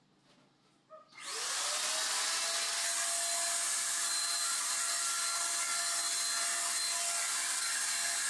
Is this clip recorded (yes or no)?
yes